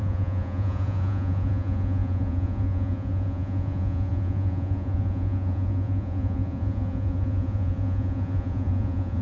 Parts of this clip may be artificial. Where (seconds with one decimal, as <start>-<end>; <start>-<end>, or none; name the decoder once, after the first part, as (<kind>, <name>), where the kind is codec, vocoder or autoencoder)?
0.0-9.2 (vocoder, Vocos)